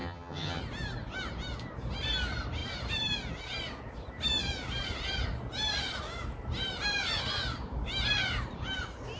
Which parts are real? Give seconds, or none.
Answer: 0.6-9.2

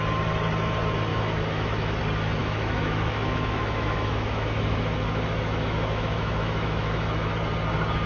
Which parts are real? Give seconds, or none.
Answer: 0.0-1.1; 2.0-2.4; 7.3-8.1

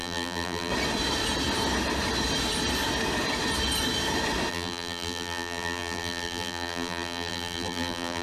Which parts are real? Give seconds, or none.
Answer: 0.7-4.5

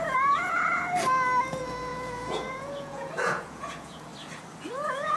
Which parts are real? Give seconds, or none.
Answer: 0.8-1.5; 4.1-4.7

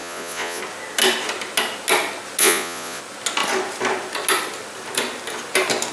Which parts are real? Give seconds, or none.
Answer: 0.6-2.4; 3.0-5.9

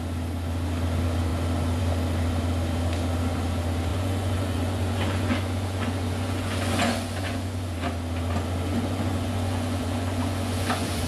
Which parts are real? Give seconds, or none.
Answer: 0.0-3.9; 7.7-8.7

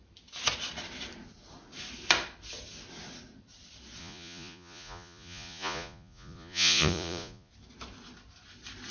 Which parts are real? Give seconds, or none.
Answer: 0.0-4.0; 7.5-8.9